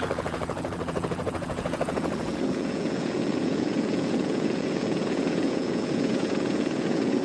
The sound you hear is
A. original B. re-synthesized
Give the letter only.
B